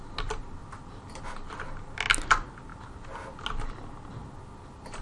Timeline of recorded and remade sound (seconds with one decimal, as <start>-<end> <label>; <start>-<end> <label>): 0.0-5.0 recorded